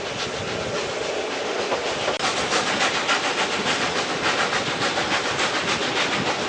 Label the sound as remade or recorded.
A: recorded